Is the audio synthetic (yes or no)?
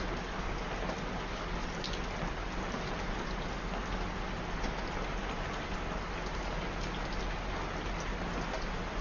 no